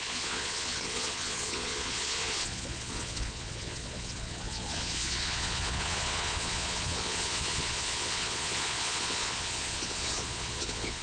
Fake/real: fake